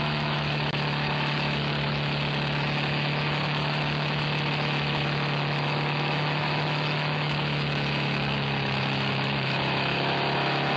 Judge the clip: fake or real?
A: fake